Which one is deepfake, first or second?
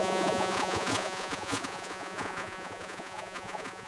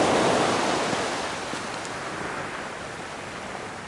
first